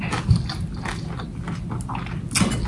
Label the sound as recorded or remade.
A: recorded